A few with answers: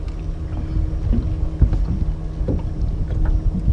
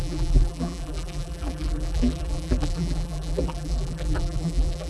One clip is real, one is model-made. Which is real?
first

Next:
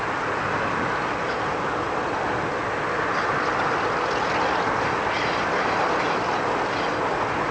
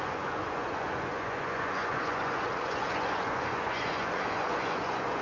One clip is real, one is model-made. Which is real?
first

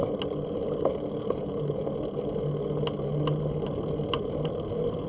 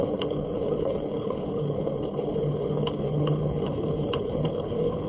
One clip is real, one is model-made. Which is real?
first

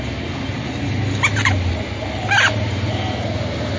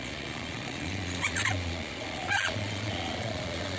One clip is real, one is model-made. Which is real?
first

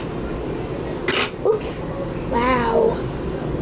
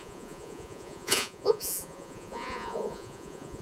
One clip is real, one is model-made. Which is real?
first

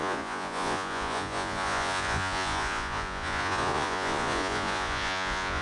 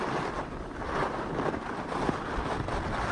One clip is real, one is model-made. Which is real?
second